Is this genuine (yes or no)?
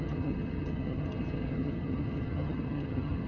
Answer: no